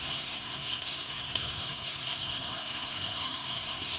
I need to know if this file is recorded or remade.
remade